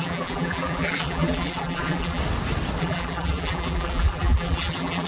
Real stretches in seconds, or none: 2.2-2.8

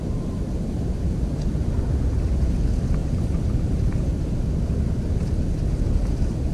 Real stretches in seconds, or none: 0.0-0.4; 1.5-3.0; 4.3-6.5

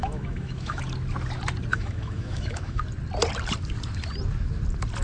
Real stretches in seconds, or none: 0.8-1.7; 2.8-5.0

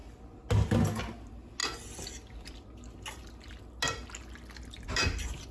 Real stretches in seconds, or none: 0.0-5.5